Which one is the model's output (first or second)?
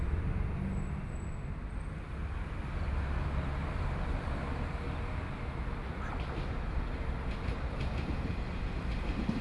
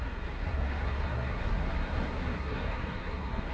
second